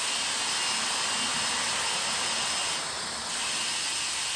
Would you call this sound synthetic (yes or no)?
no